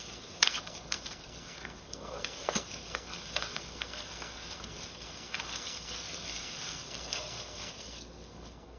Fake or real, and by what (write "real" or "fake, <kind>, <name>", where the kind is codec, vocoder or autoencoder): fake, codec, SNAC